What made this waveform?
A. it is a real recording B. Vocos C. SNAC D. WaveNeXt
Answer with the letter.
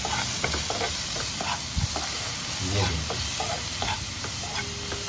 A